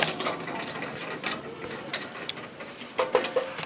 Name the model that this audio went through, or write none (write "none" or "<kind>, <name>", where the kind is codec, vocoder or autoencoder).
none